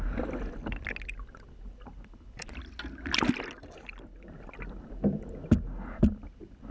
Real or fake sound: real